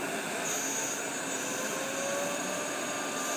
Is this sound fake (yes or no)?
no